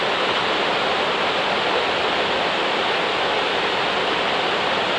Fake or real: real